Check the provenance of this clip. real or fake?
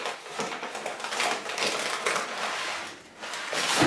real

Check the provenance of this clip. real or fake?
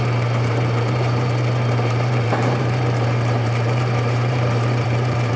fake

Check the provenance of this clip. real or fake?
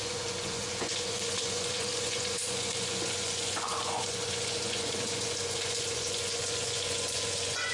fake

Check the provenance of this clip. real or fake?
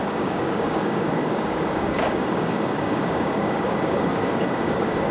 fake